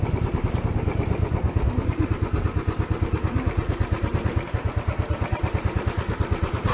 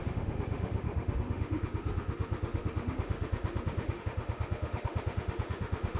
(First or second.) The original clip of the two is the first